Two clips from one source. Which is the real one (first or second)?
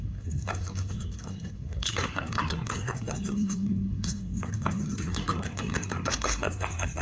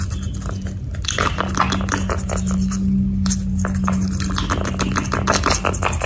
second